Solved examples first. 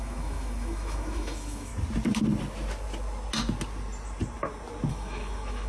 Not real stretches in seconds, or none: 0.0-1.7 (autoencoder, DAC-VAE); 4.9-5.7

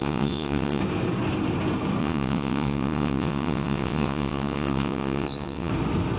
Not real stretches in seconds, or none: 0.0-0.8 (vocoder, WaveNeXt); 2.0-5.7

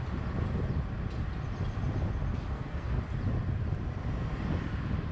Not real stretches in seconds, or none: 2.3-3.0 (codec, SNAC)

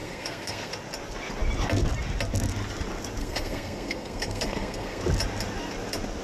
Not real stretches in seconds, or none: 0.0-0.7 (codec, SNAC); 3.2-5.0

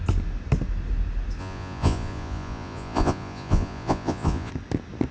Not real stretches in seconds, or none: 1.4-4.5 (vocoder, Vocos)

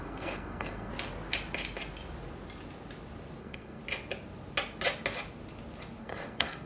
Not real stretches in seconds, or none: 0.0-0.9 (codec, SNAC); 3.4-3.8; 6.0-6.7

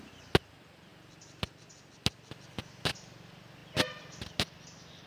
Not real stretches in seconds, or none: none

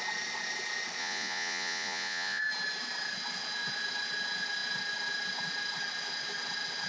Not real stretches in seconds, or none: 1.0-2.4 (vocoder, Vocos)